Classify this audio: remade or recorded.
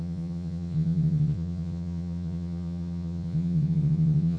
remade